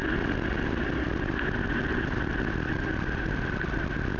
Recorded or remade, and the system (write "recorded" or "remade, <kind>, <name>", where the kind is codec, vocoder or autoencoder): recorded